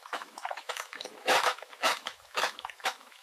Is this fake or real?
fake